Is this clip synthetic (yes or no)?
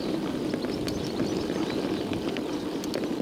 no